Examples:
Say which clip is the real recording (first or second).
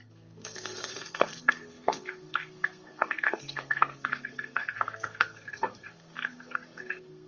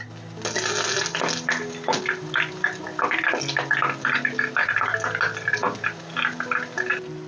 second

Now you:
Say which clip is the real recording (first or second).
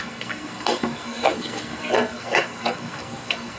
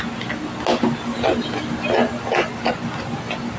second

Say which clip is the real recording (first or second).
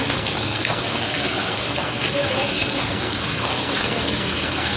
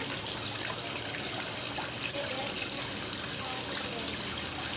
second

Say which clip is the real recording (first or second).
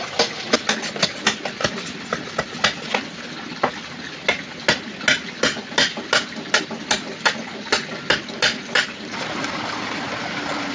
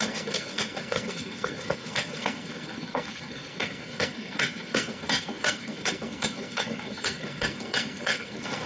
first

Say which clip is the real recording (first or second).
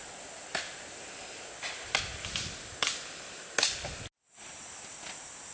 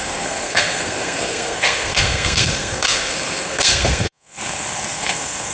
first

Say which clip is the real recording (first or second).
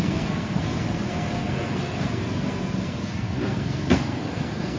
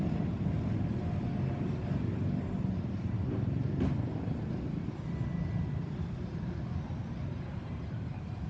second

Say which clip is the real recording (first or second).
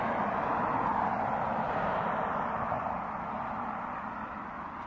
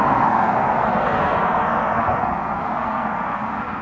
first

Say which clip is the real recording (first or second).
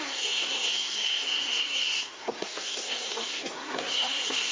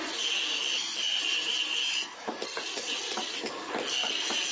second